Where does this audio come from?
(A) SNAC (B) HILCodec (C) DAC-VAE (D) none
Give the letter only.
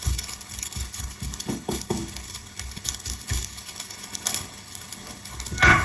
B